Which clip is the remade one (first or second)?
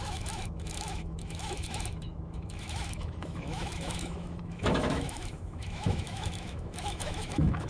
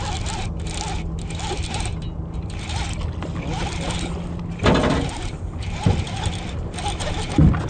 first